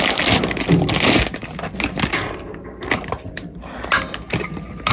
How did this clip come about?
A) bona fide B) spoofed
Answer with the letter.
A